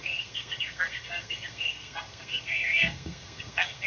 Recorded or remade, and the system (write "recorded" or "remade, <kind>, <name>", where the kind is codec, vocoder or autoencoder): remade, codec, SNAC